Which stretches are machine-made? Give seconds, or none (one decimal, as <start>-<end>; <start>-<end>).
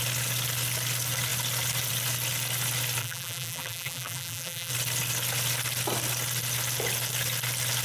3.0-4.7